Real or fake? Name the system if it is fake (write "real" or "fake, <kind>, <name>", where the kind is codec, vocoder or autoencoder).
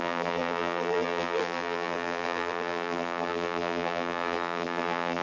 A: fake, vocoder, BigVGAN v2